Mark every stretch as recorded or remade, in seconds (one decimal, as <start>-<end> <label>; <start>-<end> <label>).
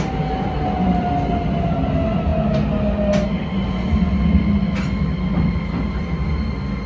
0.0-6.9 recorded